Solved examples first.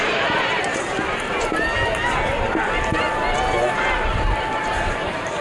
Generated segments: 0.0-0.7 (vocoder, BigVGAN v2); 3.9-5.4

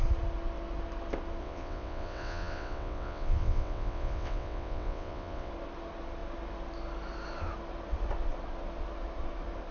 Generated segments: 1.4-5.5 (vocoder, WaveNeXt)

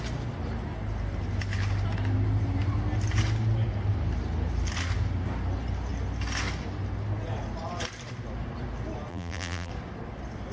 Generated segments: 9.1-9.7 (vocoder, BigVGAN v2)